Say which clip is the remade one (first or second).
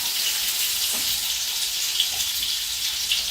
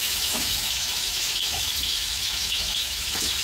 second